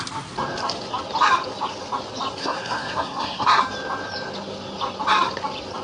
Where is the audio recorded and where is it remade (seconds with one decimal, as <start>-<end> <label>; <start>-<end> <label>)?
0.0-2.4 recorded; 2.4-3.6 remade; 3.6-5.8 recorded